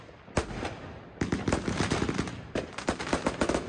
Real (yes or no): yes